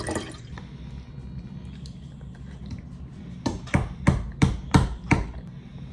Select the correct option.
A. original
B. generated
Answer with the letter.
A